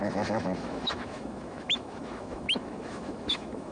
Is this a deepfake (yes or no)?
yes